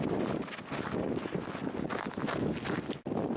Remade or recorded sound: recorded